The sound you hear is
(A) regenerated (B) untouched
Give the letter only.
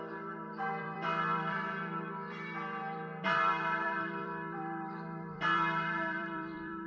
A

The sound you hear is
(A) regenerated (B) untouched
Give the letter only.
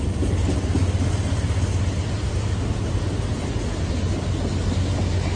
B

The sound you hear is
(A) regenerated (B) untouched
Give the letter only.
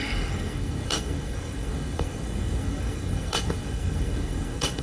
A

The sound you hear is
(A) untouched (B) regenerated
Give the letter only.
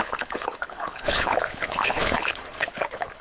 B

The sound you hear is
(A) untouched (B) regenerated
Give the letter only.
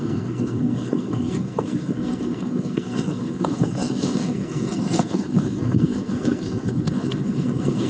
B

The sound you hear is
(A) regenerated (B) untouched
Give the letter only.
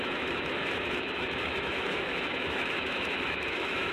A